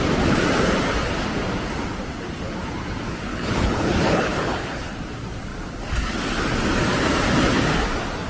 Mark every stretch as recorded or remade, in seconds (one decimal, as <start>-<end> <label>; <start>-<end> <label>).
0.0-3.3 recorded; 3.3-4.9 remade; 4.9-8.3 recorded